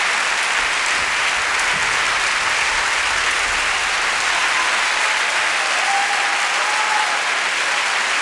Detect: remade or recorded recorded